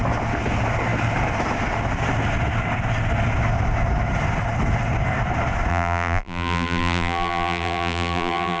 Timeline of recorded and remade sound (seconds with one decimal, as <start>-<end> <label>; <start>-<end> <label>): 0.0-5.7 recorded; 5.7-8.6 remade